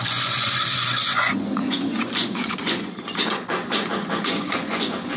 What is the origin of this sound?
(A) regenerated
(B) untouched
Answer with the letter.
A